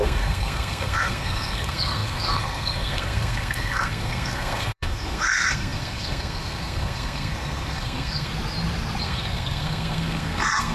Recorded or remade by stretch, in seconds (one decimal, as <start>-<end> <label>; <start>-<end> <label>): 0.0-8.3 remade; 8.3-9.0 recorded; 9.0-10.7 remade